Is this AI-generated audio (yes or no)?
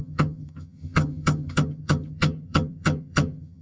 yes